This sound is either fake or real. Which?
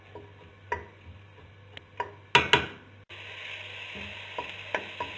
real